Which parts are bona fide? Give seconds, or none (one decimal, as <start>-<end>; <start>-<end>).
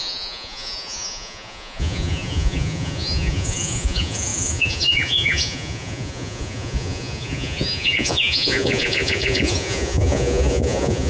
none